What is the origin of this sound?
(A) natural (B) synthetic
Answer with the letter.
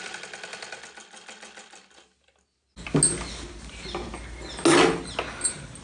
A